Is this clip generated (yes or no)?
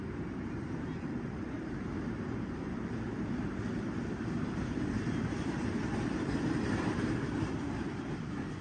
yes